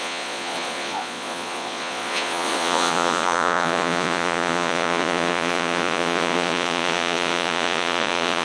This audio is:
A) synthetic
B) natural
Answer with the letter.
A